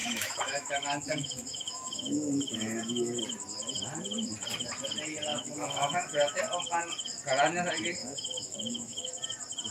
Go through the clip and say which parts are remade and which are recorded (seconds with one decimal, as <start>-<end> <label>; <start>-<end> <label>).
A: 0.0-3.2 remade; 3.2-5.3 recorded; 5.3-6.4 remade; 6.4-8.0 recorded; 8.0-9.1 remade; 9.1-9.7 recorded